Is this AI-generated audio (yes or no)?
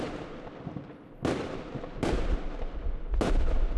no